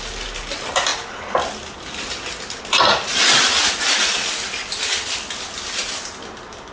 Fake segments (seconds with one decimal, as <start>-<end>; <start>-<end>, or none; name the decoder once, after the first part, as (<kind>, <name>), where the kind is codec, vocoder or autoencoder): none